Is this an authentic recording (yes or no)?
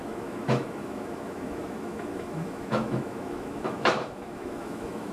no